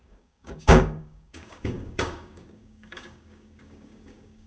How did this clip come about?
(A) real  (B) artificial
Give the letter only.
B